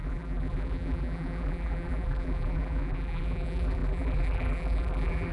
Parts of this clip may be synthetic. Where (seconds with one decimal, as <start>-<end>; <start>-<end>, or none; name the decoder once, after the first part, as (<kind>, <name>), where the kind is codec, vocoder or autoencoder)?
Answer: 0.0-5.3 (vocoder, BigVGAN v2)